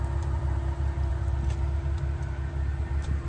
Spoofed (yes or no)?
no